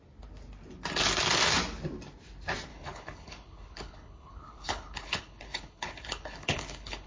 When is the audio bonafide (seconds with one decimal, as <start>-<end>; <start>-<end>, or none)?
0.0-2.7

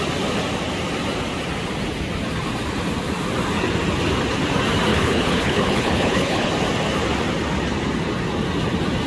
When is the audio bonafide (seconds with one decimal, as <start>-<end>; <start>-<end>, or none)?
0.0-4.9; 6.5-9.1